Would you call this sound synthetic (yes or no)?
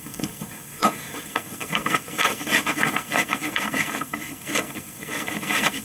yes